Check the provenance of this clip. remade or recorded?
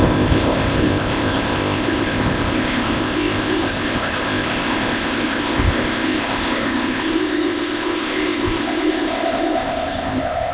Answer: remade